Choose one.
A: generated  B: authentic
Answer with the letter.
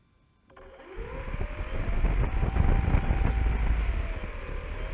B